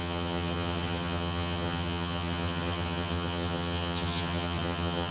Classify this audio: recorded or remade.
remade